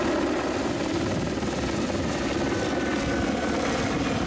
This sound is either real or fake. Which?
real